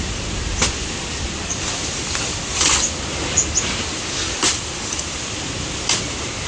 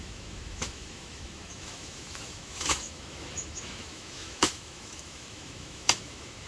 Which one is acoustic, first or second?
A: first